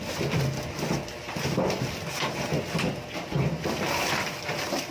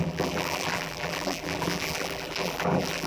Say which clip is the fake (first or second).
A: second